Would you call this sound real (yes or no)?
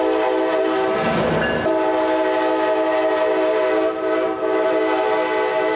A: yes